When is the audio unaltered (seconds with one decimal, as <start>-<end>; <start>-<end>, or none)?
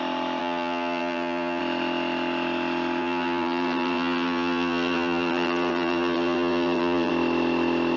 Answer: 0.0-0.4; 1.6-3.0; 7.1-8.0